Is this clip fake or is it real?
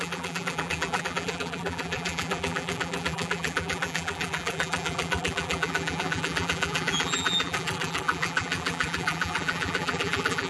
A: fake